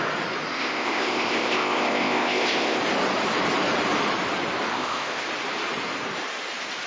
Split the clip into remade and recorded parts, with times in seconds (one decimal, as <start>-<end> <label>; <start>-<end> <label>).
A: 0.0-0.5 recorded; 0.5-2.8 remade; 2.8-4.7 recorded; 4.7-5.3 remade; 5.3-6.9 recorded